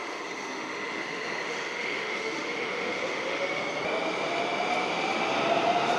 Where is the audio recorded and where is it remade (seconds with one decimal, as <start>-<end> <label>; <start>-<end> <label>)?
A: 0.0-3.6 remade; 3.6-6.0 recorded